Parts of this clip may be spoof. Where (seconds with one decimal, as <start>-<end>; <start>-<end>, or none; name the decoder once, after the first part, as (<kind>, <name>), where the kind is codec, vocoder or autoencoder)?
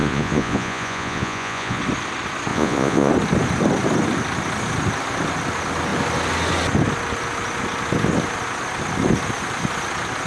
0.0-1.8 (vocoder, Vocos); 2.5-3.1